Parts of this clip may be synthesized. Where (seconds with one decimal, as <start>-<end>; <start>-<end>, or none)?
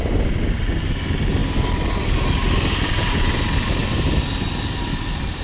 none